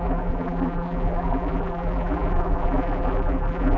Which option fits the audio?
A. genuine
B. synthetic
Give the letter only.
B